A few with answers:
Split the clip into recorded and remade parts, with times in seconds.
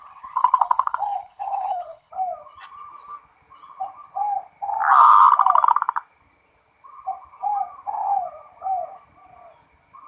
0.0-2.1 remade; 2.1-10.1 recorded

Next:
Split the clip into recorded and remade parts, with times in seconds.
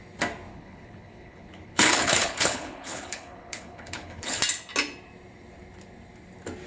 0.0-0.5 recorded; 0.5-4.4 remade; 4.4-6.7 recorded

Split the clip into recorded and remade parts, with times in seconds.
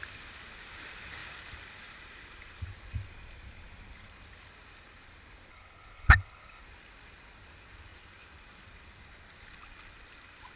0.0-5.5 recorded; 5.5-6.6 remade; 6.6-10.6 recorded